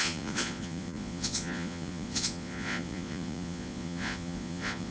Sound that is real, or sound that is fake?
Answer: fake